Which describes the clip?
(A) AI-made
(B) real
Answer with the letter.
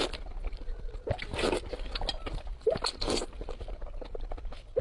B